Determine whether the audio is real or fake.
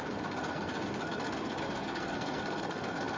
fake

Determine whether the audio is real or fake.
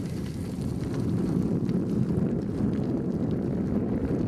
real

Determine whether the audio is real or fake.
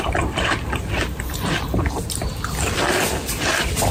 real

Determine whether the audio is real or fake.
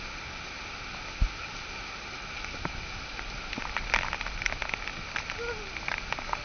real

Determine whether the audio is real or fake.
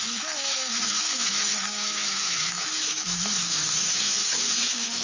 fake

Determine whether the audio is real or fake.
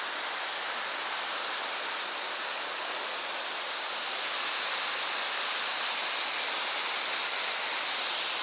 real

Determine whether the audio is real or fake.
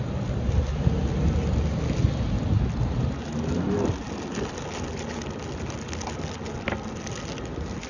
real